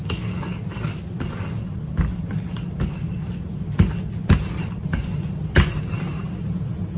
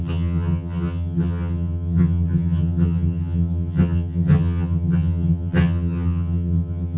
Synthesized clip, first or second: second